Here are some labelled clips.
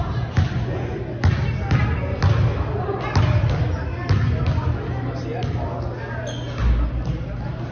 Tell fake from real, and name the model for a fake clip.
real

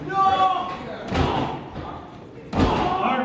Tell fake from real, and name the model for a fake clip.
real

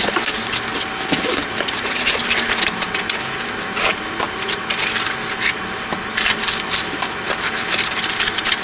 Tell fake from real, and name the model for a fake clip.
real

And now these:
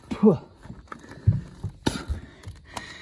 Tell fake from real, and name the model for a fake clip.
real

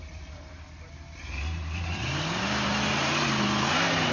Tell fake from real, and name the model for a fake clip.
real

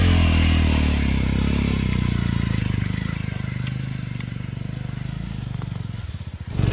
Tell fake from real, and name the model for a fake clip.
real